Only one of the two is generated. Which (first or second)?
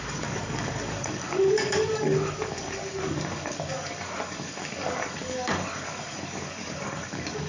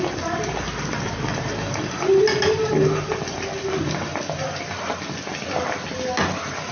first